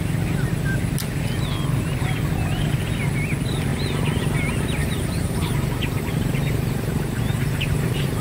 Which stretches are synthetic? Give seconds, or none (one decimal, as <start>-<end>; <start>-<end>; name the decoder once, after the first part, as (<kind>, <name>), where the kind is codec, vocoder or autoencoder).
4.8-8.2 (vocoder, BigVGAN v2)